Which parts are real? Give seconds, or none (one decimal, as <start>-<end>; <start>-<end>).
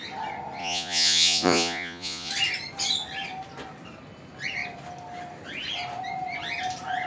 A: 0.0-0.6; 2.3-7.1